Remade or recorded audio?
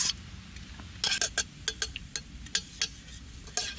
recorded